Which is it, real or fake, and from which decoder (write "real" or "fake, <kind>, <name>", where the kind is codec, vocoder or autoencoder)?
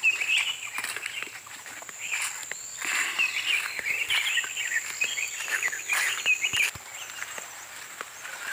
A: fake, vocoder, BigVGAN v2